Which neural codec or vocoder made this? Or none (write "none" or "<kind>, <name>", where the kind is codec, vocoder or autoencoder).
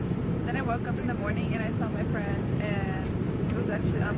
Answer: vocoder, BigVGAN v2